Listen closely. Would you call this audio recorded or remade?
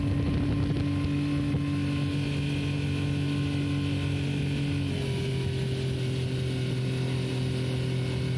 recorded